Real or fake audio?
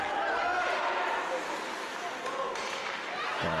real